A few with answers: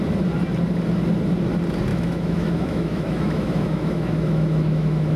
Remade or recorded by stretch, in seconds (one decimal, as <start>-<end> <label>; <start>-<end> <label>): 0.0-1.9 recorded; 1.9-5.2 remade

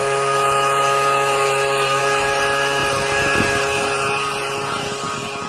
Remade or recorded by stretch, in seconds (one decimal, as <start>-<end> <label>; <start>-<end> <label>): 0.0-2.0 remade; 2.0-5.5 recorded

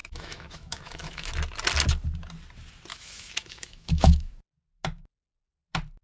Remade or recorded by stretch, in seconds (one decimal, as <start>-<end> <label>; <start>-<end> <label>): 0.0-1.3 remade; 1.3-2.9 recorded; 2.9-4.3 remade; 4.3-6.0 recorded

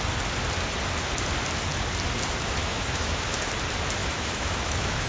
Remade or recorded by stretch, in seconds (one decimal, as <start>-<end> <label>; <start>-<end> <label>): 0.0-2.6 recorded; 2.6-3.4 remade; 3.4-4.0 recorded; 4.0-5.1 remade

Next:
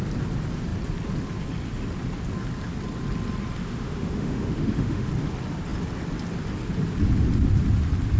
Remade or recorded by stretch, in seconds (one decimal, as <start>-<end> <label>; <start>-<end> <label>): 0.0-3.6 recorded; 3.6-5.1 remade; 5.1-8.2 recorded

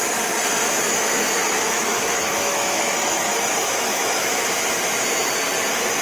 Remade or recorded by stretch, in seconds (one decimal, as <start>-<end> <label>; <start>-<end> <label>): 0.0-1.4 recorded; 1.4-4.5 remade; 4.5-6.0 recorded